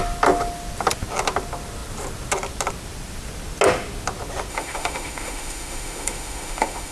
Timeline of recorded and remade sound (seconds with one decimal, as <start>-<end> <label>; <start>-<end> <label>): 0.0-4.5 recorded; 4.5-6.9 remade